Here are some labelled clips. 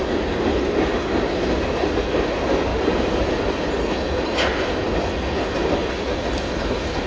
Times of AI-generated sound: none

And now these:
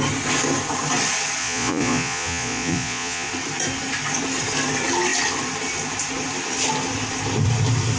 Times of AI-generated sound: 1.4-3.3 (vocoder, Vocos)

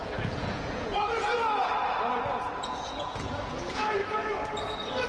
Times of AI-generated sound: 0.0-1.3 (vocoder, Vocos); 2.6-4.0

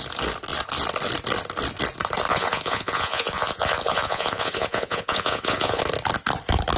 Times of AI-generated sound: 2.3-5.8 (vocoder, Vocos)